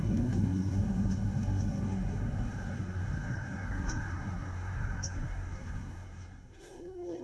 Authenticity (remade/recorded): remade